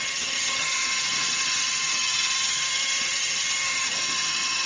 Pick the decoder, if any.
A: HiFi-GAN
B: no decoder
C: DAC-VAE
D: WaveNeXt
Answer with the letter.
A